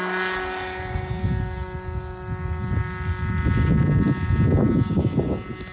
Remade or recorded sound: recorded